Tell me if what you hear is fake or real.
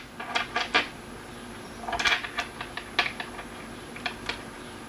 real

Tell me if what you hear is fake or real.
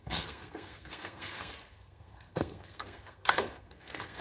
fake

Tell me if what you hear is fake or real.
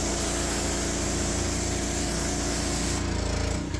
real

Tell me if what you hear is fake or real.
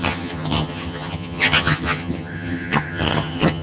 fake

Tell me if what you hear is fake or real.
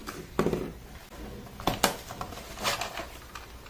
real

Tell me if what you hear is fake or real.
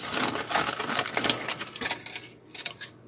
real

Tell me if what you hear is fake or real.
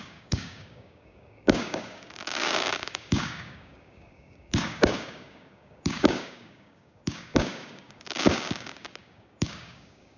fake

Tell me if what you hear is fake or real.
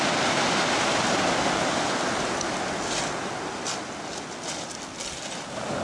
real